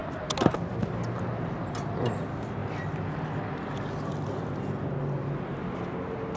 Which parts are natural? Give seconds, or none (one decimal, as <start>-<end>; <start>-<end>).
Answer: 0.0-6.4